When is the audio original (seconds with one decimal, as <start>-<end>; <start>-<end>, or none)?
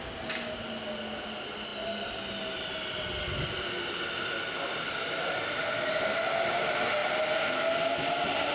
0.0-8.5